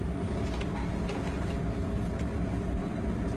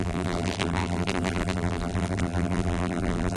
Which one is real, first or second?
first